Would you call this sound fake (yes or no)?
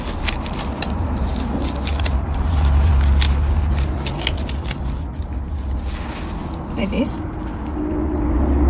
no